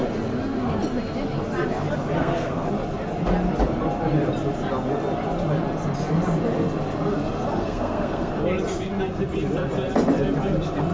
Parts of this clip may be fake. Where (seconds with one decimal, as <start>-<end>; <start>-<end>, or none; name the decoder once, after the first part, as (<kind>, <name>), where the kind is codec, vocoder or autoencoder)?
2.2-2.7 (codec, SNAC); 7.6-8.3